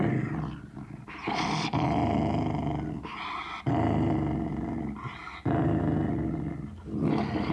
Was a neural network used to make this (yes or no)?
no